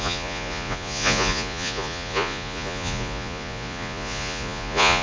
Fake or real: fake